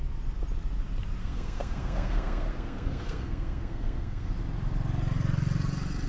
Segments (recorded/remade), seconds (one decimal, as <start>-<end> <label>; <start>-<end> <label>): 0.0-1.2 recorded; 1.2-4.3 remade; 4.3-6.1 recorded